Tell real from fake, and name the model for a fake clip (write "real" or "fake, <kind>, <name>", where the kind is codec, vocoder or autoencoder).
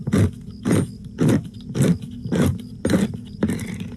real